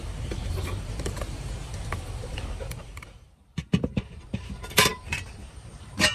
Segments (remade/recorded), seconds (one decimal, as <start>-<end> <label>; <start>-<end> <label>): 0.0-6.1 remade